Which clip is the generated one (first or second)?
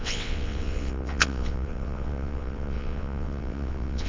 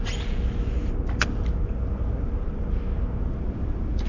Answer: first